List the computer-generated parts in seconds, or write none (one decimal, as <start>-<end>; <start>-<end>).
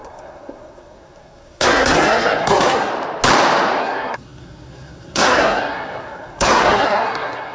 0.0-2.9; 3.8-7.5